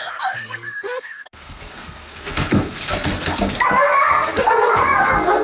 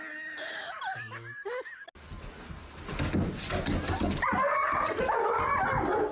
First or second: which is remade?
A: first